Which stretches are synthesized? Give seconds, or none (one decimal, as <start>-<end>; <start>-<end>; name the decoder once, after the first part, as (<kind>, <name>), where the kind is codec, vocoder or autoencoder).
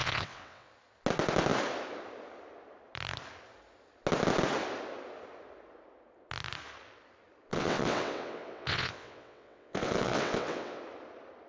0.0-0.7 (vocoder, WaveNeXt); 7.5-10.8